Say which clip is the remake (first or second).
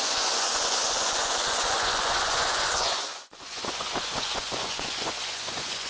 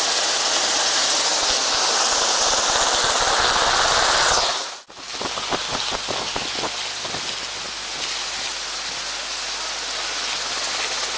first